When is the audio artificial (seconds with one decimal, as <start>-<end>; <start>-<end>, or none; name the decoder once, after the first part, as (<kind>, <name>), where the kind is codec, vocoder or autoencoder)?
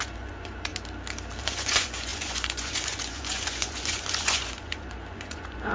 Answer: 0.0-0.7 (vocoder, Vocos); 1.4-5.7